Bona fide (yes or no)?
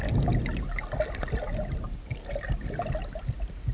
yes